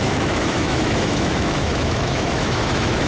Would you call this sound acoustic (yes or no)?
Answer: no